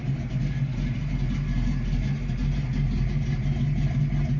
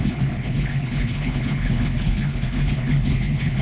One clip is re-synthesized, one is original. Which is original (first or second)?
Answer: first